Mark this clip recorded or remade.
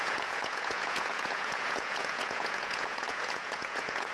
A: remade